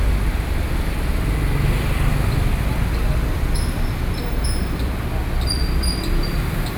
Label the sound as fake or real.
real